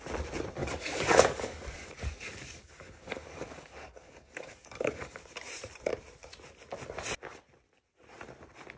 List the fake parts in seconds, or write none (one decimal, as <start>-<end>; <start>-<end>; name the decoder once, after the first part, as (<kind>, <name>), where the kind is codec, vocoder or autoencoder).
0.6-5.2 (codec, DAC)